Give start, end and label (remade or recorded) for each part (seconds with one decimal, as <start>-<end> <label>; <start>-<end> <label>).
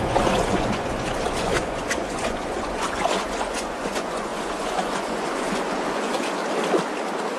0.0-6.4 remade; 6.4-7.4 recorded